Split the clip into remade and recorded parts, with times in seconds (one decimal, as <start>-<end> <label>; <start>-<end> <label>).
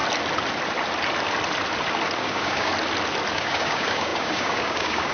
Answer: 0.0-2.2 recorded; 2.2-2.7 remade; 2.7-3.3 recorded; 3.3-5.1 remade